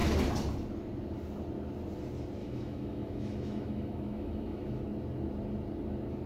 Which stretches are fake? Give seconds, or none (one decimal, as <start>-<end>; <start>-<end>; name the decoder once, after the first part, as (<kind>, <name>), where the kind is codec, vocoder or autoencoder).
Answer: 2.4-4.8 (autoencoder, DAC-VAE)